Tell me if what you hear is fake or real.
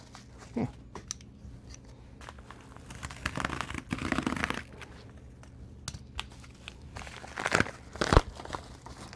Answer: real